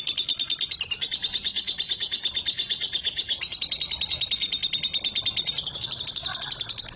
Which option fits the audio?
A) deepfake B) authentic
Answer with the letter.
B